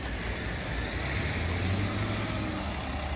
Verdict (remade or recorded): recorded